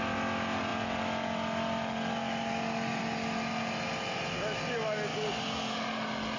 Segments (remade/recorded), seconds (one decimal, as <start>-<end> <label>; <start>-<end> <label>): 0.0-6.4 recorded